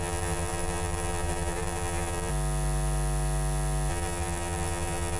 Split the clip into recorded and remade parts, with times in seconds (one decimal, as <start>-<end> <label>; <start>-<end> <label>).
0.0-2.3 remade; 2.3-3.9 recorded; 3.9-5.2 remade